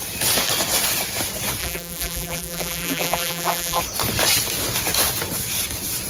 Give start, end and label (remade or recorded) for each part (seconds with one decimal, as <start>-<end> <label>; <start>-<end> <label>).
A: 0.0-1.6 recorded; 1.6-3.8 remade; 3.8-6.1 recorded